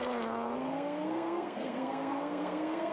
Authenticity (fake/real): fake